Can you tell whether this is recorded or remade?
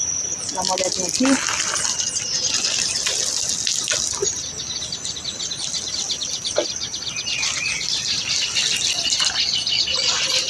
recorded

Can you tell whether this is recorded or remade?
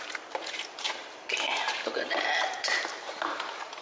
remade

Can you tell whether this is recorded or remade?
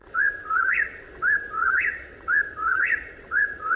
remade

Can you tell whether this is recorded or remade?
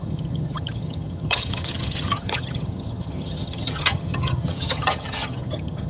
remade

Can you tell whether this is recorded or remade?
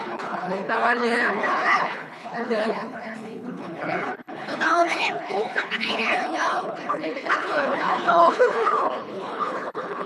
remade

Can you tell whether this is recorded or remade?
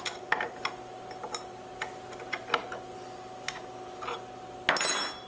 recorded